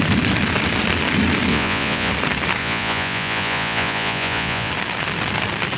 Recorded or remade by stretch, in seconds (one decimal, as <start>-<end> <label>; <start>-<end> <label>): 0.0-1.5 recorded; 1.5-2.1 remade; 2.1-2.6 recorded; 2.6-4.7 remade; 4.7-5.8 recorded